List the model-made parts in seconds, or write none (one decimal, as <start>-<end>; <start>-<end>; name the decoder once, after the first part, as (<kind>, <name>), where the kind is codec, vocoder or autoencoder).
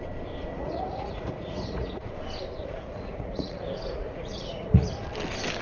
0.5-2.1 (vocoder, Vocos); 2.6-4.9